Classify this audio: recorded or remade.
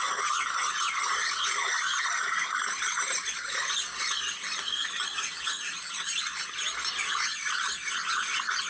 recorded